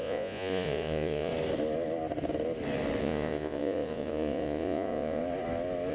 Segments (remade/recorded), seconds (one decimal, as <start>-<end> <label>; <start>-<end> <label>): 0.0-1.3 remade; 1.3-3.0 recorded; 3.0-5.2 remade; 5.2-5.9 recorded